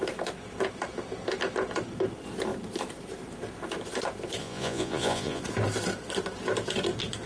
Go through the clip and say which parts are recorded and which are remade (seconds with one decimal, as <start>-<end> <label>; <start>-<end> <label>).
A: 0.0-4.4 recorded; 4.4-5.4 remade; 5.4-7.3 recorded